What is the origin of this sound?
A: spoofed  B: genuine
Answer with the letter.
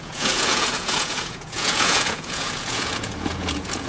A